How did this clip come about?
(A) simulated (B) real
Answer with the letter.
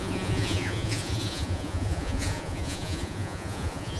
A